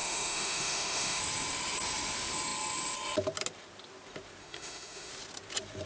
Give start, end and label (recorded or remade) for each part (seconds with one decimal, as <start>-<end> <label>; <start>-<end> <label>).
0.0-1.2 remade; 1.2-4.4 recorded; 4.4-5.1 remade; 5.1-5.9 recorded